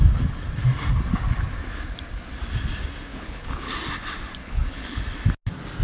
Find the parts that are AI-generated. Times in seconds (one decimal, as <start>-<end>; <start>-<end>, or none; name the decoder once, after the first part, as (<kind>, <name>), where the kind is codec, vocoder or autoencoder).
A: 3.1-3.7 (codec, HILCodec); 4.4-5.0